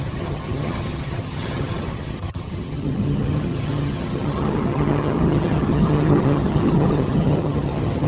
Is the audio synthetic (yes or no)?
yes